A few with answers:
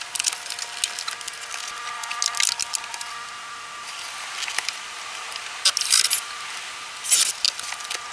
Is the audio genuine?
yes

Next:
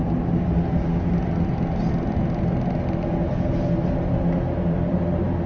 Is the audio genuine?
yes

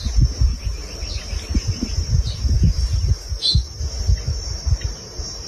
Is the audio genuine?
yes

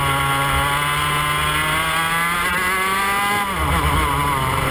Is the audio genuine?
yes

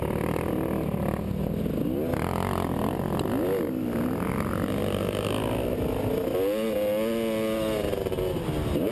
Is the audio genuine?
yes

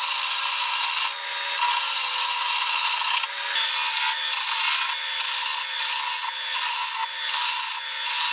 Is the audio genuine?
yes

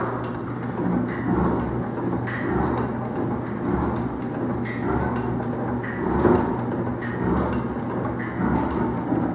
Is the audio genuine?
yes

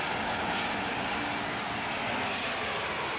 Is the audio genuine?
yes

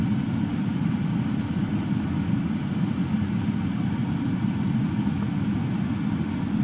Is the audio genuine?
yes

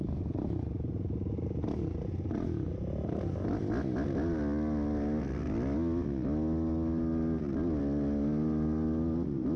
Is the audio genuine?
yes